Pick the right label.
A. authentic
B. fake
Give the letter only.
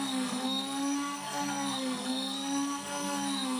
B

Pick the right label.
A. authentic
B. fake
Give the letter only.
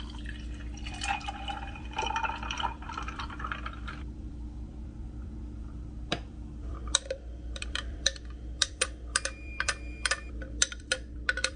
B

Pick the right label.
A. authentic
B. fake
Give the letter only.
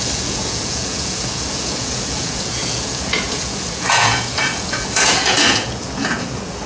B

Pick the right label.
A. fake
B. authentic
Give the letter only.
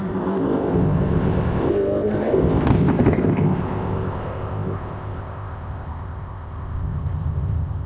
A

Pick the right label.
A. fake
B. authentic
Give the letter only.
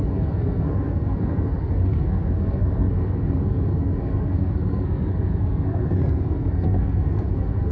A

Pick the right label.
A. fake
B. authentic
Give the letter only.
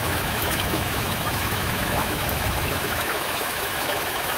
A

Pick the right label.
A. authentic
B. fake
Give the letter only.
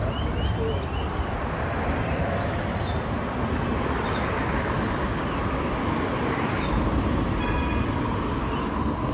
A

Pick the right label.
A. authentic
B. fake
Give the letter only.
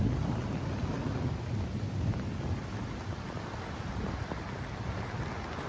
A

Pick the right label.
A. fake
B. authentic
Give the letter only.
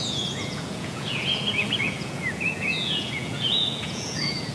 A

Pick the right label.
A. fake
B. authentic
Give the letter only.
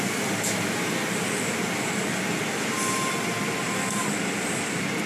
B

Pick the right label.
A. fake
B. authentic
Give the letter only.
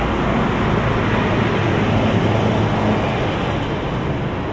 B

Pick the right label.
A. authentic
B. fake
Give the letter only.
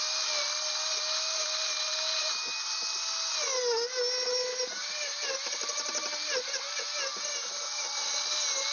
A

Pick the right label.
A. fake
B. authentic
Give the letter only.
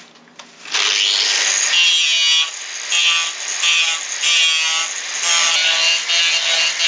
B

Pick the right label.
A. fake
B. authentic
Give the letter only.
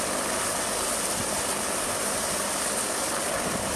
B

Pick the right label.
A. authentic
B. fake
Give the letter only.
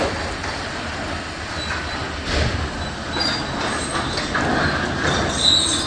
A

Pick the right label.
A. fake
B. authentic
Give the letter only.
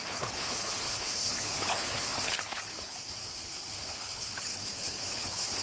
A